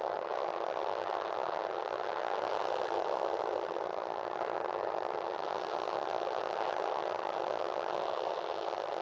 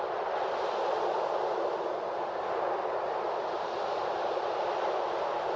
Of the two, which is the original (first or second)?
second